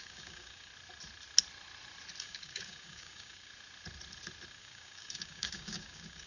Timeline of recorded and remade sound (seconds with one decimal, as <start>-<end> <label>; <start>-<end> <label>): 0.0-0.7 remade; 0.7-2.2 recorded; 2.2-3.5 remade; 3.5-4.5 recorded; 4.5-6.3 remade